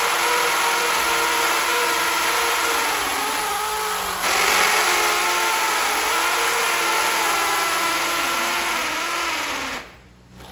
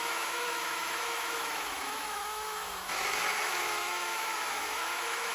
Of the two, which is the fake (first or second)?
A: second